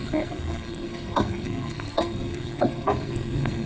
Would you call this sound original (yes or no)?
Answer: no